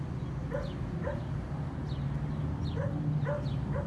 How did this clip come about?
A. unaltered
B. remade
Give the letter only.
A